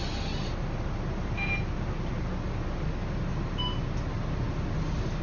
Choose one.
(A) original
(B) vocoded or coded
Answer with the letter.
A